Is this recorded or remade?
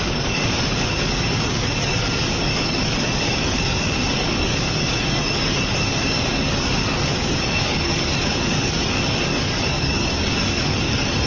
remade